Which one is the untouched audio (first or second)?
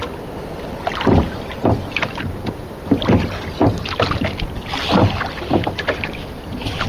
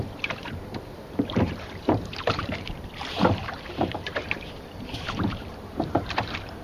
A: first